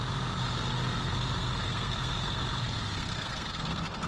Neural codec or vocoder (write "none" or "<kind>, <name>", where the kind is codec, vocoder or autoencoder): codec, SNAC